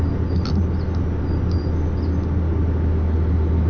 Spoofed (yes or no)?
no